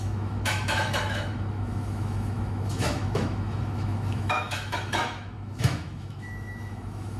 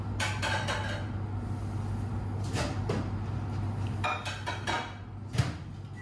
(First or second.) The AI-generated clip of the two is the first